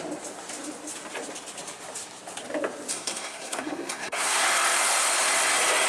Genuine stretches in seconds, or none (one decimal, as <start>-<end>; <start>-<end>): 0.0-2.9; 4.4-5.9